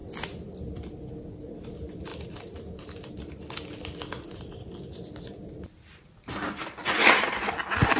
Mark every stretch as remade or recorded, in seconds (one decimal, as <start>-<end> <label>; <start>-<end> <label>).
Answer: 0.0-7.0 recorded; 7.0-7.5 remade; 7.5-8.0 recorded